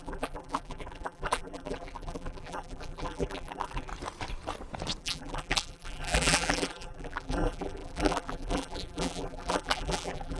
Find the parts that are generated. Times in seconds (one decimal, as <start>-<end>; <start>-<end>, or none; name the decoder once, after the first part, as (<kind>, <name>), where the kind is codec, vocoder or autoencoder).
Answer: 0.0-3.9 (vocoder, BigVGAN v2); 5.0-10.4